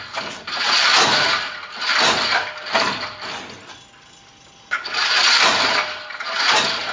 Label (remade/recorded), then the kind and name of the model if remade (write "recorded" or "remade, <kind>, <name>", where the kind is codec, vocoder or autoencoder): recorded